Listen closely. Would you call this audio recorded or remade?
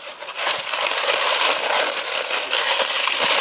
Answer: recorded